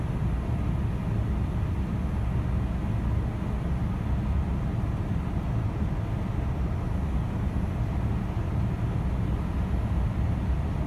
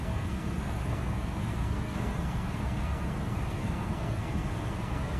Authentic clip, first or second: first